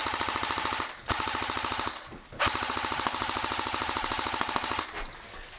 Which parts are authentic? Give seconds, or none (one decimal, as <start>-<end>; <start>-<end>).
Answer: 0.0-5.6